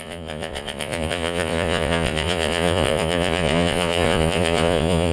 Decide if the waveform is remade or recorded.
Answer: remade